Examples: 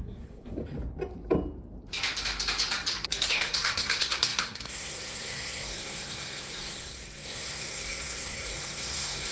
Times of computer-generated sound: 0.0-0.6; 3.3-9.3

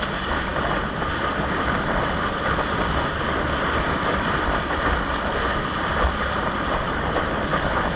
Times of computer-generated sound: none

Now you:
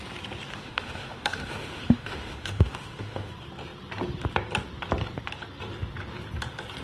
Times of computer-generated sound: 0.5-3.3

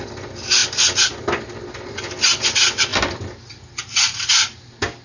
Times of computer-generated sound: none

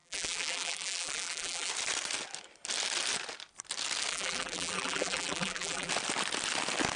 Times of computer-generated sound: 0.0-1.7; 4.1-5.9

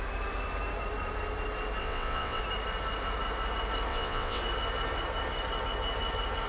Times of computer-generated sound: 1.8-2.4; 3.9-4.4